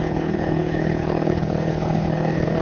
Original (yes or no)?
no